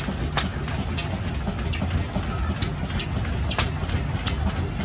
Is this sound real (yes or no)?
yes